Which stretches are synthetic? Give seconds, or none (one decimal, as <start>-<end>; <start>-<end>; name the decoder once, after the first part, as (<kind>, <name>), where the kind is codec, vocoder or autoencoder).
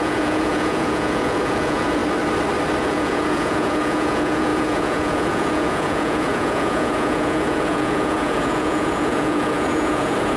0.0-2.0 (vocoder, Vocos); 2.8-10.4